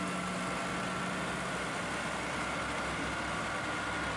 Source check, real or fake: real